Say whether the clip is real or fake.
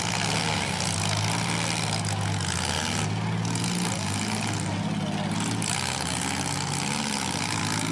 real